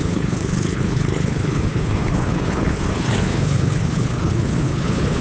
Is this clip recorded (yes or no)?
no